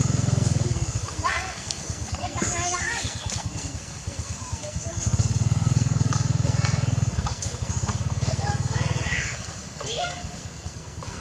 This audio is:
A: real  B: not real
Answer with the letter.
B